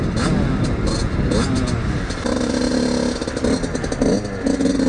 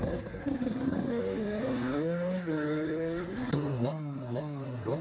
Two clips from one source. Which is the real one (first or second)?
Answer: first